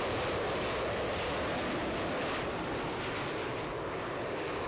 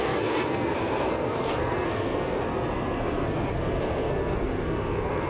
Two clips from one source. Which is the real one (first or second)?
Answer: first